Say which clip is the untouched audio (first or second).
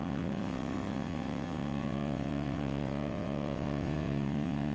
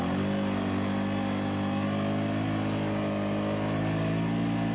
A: second